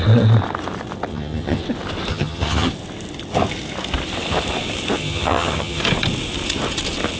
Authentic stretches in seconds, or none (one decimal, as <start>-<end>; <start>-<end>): 0.0-1.1; 1.6-2.1; 2.7-5.0; 5.8-7.2